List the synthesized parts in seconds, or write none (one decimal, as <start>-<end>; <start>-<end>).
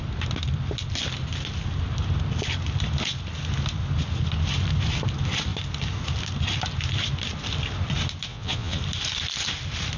8.3-8.8